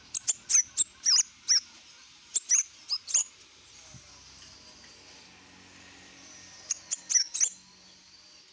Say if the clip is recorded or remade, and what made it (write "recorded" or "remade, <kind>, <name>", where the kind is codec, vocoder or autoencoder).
recorded